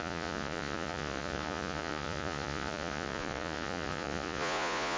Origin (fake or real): fake